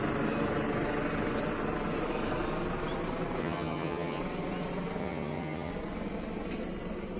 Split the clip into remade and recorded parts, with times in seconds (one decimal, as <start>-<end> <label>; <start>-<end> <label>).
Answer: 0.0-3.4 recorded; 3.4-4.2 remade; 4.2-5.0 recorded; 5.0-5.7 remade; 5.7-7.2 recorded